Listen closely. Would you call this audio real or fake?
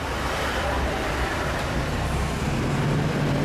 fake